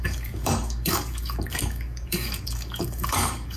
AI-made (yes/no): yes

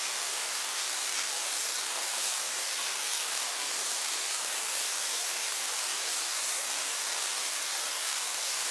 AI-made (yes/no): yes